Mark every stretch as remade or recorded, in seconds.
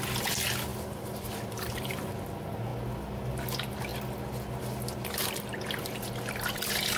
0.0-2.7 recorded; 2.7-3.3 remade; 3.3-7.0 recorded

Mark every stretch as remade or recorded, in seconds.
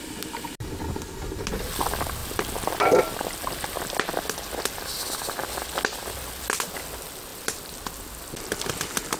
0.0-7.3 recorded; 7.3-9.2 remade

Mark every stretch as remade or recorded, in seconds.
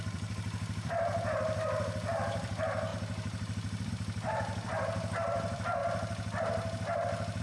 0.0-2.9 remade; 2.9-3.9 recorded; 3.9-7.4 remade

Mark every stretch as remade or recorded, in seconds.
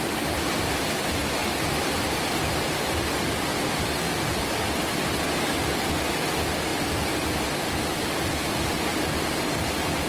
0.0-1.4 recorded; 1.4-2.2 remade; 2.2-3.5 recorded; 3.5-4.4 remade; 4.4-6.7 recorded; 6.7-8.9 remade; 8.9-10.1 recorded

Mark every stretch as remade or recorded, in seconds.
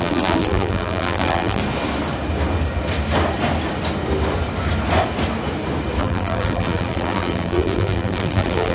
0.0-1.6 remade; 1.6-6.0 recorded; 6.0-8.7 remade